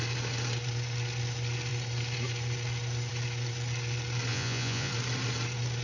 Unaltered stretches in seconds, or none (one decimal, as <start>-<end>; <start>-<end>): 0.0-4.3; 4.9-5.8